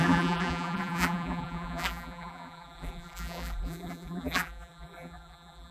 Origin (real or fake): fake